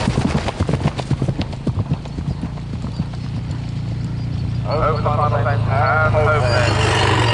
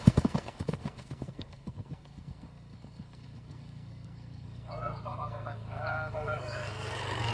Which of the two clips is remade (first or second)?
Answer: second